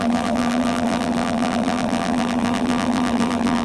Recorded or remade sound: remade